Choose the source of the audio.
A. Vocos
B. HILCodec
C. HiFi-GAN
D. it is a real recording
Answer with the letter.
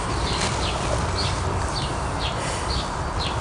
D